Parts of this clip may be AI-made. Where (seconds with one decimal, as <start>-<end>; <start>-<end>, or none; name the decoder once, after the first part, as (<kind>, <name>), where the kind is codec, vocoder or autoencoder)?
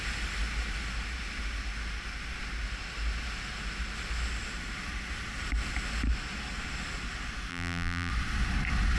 7.5-8.1 (vocoder, BigVGAN v2)